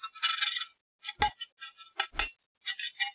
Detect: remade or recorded recorded